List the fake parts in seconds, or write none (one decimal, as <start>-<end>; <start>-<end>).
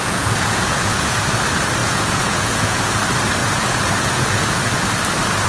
0.0-1.2; 1.8-3.0; 3.4-4.6